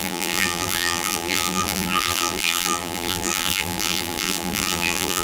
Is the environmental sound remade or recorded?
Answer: remade